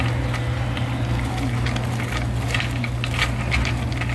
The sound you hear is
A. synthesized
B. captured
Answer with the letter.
B